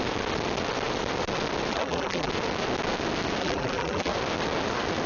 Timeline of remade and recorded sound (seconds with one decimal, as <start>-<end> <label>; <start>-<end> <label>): 0.0-1.7 recorded; 1.7-2.3 remade; 2.3-3.4 recorded; 3.4-4.1 remade; 4.1-5.1 recorded